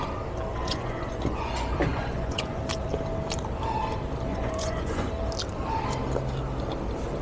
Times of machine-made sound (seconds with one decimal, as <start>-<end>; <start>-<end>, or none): 0.5-1.5; 1.9-2.6; 4.3-5.1